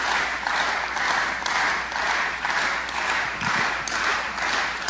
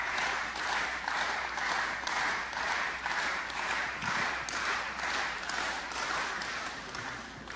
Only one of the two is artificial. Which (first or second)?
second